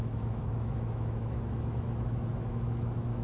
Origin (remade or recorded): remade